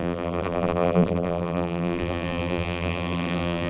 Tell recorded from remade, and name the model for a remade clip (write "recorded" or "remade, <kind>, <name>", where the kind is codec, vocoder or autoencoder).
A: remade, vocoder, BigVGAN v2